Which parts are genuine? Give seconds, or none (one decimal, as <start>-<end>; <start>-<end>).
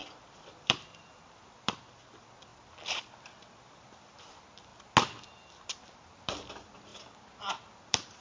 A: 2.5-3.6; 4.7-5.4; 6.9-7.7